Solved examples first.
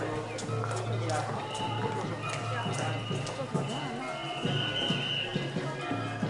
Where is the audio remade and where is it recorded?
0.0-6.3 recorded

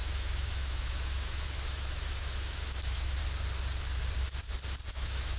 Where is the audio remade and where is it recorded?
0.0-3.2 remade; 3.2-4.9 recorded; 4.9-5.4 remade

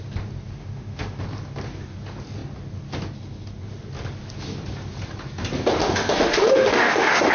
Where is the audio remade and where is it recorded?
0.0-0.6 recorded; 0.6-1.2 remade; 1.2-5.8 recorded; 5.8-7.3 remade

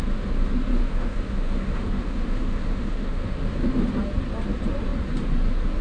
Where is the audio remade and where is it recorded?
0.0-0.7 recorded; 0.7-3.7 remade; 3.7-5.8 recorded